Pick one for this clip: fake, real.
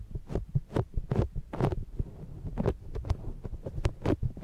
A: real